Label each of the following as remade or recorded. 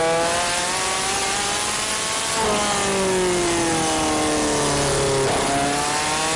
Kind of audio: recorded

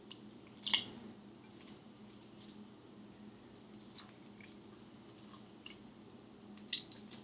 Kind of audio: recorded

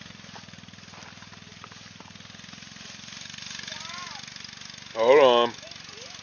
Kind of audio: recorded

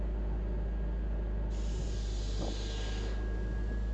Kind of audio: recorded